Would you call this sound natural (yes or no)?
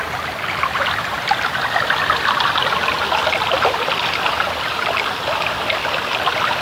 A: yes